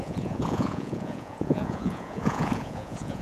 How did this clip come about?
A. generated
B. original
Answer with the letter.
A